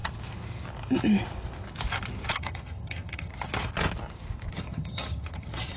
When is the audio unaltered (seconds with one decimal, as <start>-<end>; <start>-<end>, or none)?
0.0-2.3; 3.3-4.5